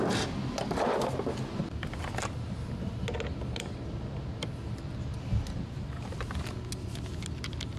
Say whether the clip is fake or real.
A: real